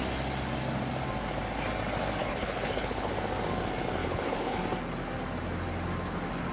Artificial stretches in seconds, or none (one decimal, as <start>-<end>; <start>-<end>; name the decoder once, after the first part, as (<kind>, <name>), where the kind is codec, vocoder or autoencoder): 2.2-3.1 (codec, HILCodec); 4.0-4.6